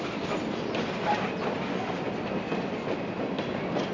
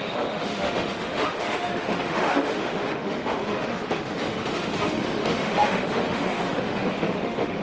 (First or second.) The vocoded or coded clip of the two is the second